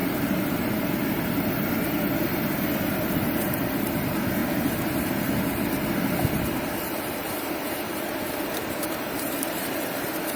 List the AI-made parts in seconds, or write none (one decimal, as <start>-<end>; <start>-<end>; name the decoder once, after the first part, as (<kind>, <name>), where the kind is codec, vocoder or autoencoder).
0.0-0.9 (vocoder, BigVGAN v2); 7.2-9.7